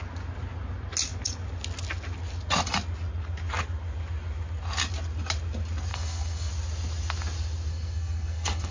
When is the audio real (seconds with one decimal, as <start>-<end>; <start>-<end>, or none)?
0.0-5.9; 6.5-7.7